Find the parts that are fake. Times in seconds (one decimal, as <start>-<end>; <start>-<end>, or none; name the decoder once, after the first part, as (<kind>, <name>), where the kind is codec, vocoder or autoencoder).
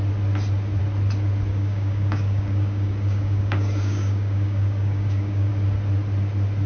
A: 1.5-5.5 (codec, DAC)